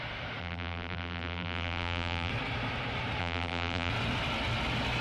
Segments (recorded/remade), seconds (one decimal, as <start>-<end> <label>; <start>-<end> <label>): 0.0-0.4 recorded; 0.4-2.3 remade; 2.3-3.2 recorded; 3.2-3.9 remade; 3.9-5.0 recorded